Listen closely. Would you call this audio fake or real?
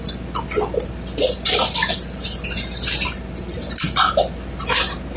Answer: real